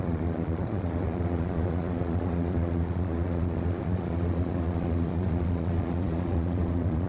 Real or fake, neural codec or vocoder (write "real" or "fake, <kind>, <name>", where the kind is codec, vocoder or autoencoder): fake, vocoder, Vocos